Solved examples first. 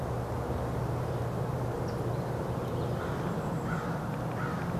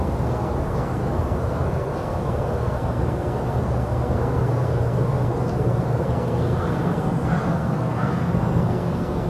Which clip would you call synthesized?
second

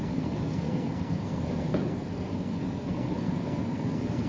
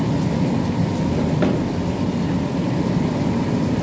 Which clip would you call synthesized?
first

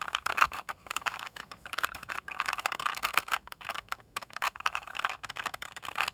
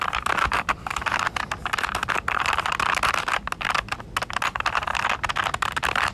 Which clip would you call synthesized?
first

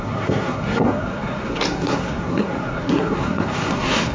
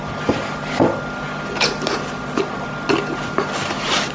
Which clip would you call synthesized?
first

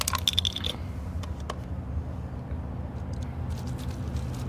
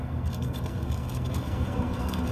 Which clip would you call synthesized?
second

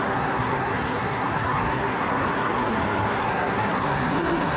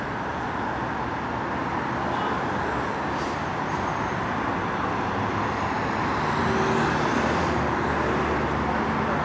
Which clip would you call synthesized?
first